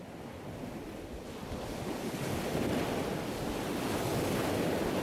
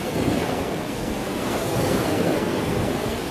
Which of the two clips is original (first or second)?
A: first